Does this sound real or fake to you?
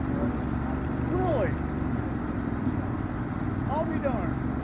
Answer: real